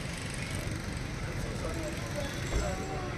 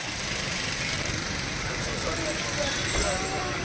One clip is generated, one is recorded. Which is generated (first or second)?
second